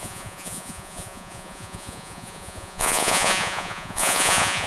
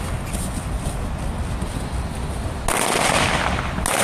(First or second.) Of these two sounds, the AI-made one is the first